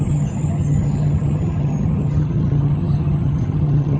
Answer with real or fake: fake